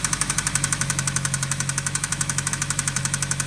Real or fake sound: fake